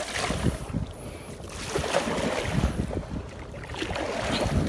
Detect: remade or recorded recorded